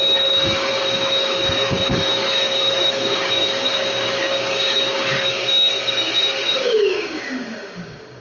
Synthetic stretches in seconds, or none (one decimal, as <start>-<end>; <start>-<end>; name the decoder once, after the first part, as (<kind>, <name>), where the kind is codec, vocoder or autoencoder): 0.0-8.2 (codec, DAC)